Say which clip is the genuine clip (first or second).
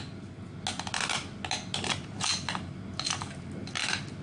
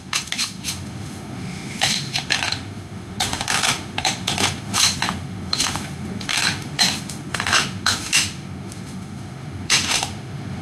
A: first